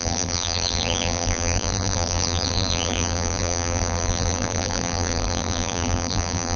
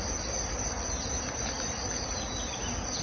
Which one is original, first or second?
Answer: second